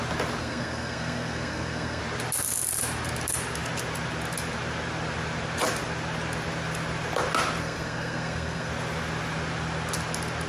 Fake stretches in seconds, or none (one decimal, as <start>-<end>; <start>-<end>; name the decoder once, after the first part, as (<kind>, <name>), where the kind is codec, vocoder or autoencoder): 0.4-2.0 (codec, SNAC); 7.6-8.7